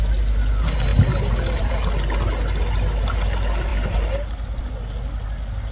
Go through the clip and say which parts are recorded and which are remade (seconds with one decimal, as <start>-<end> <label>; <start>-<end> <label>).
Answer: 0.0-0.9 recorded; 0.9-1.7 remade; 1.7-5.7 recorded